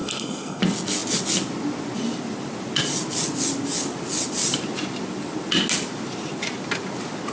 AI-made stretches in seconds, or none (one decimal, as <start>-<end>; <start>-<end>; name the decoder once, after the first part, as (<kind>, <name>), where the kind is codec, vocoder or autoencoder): 0.0-0.6 (codec, SNAC)